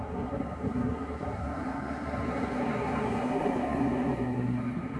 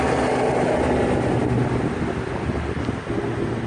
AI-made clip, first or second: first